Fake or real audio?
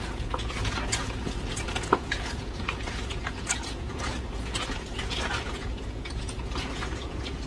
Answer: fake